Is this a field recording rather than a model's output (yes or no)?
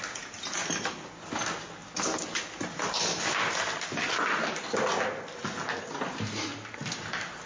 yes